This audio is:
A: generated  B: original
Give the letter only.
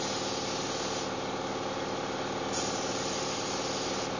B